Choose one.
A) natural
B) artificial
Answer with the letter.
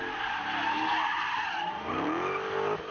A